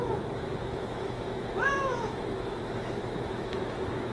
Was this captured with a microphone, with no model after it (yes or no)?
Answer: no